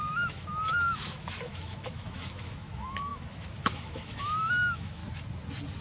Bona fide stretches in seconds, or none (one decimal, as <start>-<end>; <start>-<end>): 5.0-5.8